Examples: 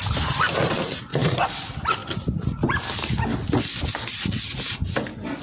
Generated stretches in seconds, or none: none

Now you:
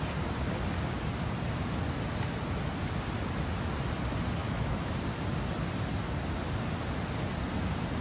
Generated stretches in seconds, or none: 4.4-4.9

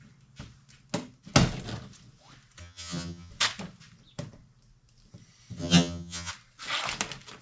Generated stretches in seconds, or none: 2.6-3.3; 5.6-6.3

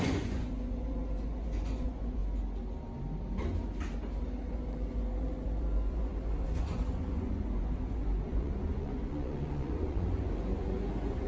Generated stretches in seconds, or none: 0.0-2.2; 4.5-11.3

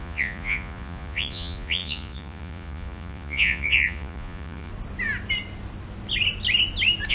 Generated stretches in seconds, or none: 0.0-4.7